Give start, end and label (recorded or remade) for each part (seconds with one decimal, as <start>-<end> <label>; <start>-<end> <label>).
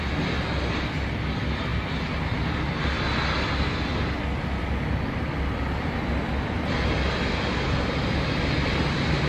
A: 0.0-9.3 recorded